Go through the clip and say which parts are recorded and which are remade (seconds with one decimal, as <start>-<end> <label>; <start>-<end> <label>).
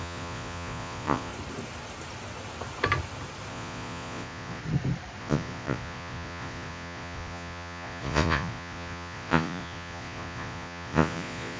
0.0-1.3 remade; 1.3-3.5 recorded; 3.5-4.6 remade; 4.6-5.2 recorded; 5.2-11.6 remade